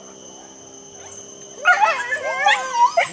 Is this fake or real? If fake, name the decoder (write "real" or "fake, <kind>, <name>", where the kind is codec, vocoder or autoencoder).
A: real